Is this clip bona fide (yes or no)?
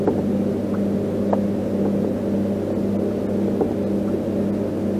yes